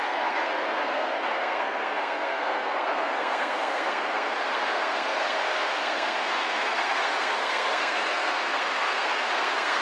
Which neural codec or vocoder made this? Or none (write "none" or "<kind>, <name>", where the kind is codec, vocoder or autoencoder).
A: codec, SNAC